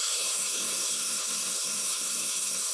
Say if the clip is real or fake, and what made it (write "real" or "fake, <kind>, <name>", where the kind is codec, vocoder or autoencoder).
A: fake, codec, SNAC